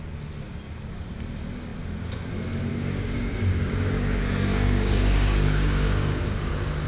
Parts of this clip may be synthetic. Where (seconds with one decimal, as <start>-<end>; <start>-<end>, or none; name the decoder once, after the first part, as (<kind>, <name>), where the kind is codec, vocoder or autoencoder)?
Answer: 2.7-6.5 (codec, DAC)